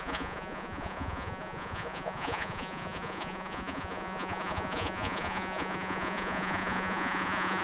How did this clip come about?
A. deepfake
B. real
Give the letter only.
A